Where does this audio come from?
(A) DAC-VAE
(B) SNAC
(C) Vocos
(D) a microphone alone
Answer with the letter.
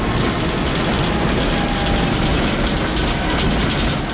D